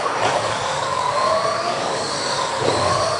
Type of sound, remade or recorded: remade